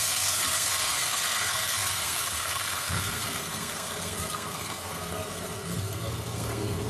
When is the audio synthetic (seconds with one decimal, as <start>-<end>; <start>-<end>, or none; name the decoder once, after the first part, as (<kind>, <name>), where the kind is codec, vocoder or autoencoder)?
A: 0.0-6.9 (codec, SNAC)